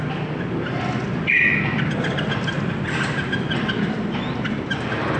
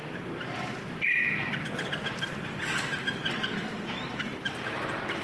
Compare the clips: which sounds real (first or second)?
first